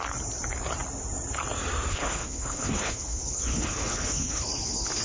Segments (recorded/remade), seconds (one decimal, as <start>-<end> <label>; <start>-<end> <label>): 0.0-1.9 recorded; 1.9-5.0 remade